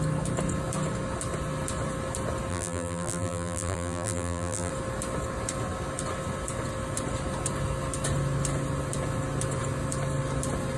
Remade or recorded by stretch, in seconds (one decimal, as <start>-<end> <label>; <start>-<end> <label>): 0.0-2.5 recorded; 2.5-4.7 remade; 4.7-10.8 recorded